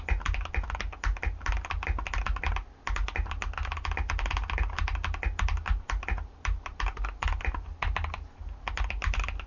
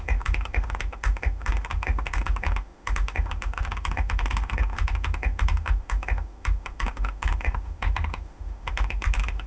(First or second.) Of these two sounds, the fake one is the second